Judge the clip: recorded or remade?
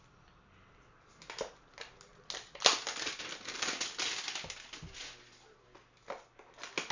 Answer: recorded